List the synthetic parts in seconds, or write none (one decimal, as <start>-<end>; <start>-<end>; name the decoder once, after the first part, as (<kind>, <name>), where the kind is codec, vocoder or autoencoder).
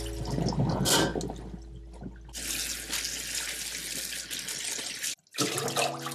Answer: none